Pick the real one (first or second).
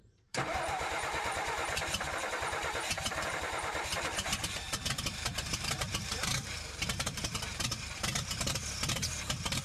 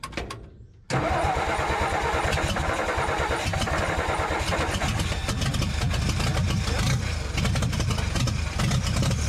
second